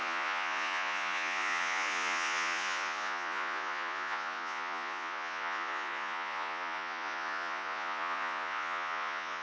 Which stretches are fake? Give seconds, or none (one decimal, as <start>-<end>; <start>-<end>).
0.0-9.4